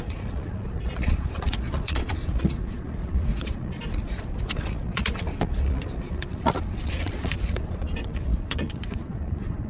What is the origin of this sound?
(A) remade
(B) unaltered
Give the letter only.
A